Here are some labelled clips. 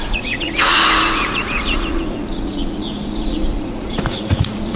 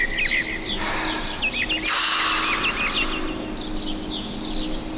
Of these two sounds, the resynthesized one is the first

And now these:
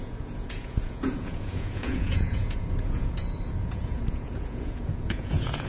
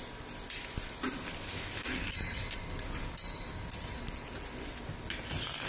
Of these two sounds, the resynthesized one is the first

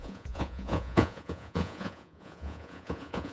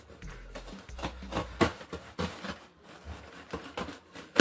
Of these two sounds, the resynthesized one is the first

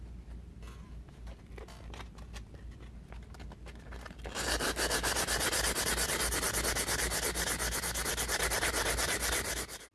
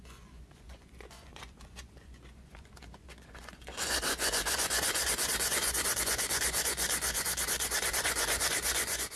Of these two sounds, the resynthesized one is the second